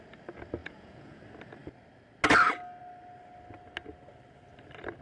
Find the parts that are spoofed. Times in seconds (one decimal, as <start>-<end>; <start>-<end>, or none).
0.6-1.2